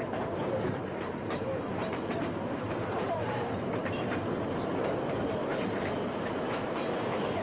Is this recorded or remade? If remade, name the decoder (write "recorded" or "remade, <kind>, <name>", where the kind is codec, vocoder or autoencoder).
remade, vocoder, BigVGAN v2